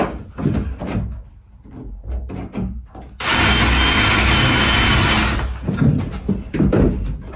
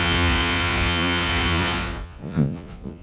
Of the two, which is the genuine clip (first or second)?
first